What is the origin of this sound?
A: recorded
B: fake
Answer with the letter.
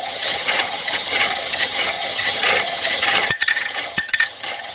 B